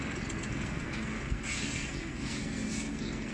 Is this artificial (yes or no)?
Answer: yes